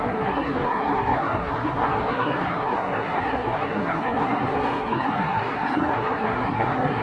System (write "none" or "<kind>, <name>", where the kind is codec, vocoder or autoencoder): codec, SNAC